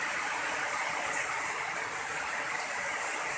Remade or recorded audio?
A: recorded